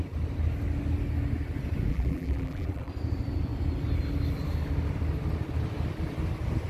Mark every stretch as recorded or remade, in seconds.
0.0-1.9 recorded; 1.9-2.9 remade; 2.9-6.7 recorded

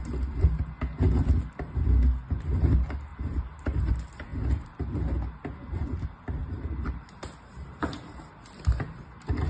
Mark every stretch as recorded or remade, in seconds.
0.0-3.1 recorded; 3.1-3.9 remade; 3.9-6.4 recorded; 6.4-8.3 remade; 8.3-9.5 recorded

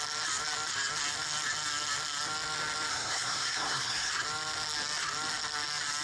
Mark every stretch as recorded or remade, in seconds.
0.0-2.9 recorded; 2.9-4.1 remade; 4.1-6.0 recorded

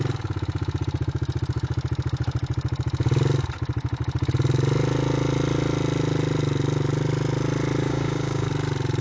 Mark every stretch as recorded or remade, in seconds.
0.0-7.8 recorded; 7.8-8.5 remade; 8.5-9.0 recorded